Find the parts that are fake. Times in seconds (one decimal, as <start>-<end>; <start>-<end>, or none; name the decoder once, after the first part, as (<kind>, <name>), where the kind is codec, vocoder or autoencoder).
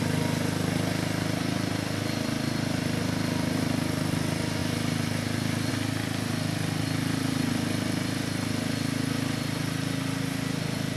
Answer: none